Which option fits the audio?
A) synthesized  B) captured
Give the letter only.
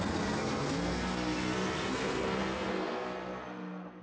A